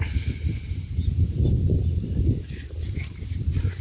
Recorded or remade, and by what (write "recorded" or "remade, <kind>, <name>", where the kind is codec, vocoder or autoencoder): recorded